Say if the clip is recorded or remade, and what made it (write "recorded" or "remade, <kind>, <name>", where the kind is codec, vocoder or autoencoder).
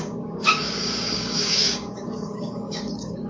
remade, codec, DAC